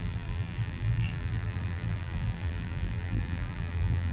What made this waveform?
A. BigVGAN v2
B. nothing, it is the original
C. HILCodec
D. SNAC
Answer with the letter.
A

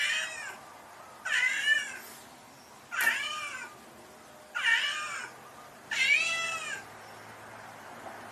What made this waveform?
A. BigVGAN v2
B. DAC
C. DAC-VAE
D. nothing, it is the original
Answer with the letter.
D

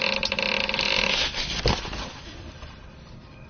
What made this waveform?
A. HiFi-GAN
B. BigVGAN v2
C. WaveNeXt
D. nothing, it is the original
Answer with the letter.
D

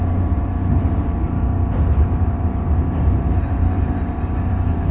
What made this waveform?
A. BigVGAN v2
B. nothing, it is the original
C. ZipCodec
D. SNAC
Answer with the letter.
A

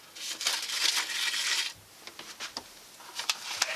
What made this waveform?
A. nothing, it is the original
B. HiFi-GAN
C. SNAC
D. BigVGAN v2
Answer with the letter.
A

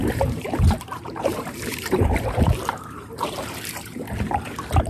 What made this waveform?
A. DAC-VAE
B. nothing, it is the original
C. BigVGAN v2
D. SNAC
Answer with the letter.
C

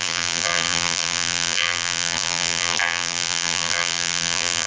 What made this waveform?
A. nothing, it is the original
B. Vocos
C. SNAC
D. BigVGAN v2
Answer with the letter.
D